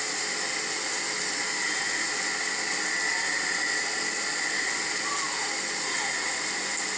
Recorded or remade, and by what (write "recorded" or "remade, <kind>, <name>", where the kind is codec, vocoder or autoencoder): recorded